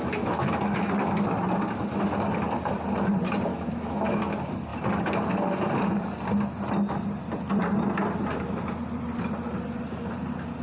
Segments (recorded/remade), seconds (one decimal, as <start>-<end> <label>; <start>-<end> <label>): 0.0-0.9 remade; 0.9-3.5 recorded; 3.5-4.2 remade; 4.2-10.6 recorded